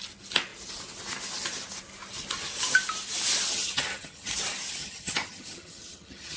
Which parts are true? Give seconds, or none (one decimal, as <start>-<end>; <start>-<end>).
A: 0.0-3.5; 4.3-4.8